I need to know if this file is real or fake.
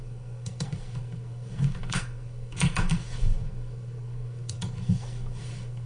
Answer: fake